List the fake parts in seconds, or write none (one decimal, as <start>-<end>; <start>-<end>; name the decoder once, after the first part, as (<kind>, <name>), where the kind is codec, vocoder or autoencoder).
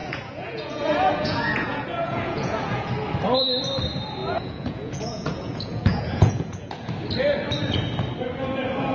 0.0-2.9 (vocoder, Vocos); 4.2-6.9